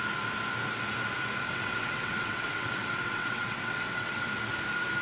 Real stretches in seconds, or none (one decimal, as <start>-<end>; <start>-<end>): 0.0-1.4; 4.3-5.0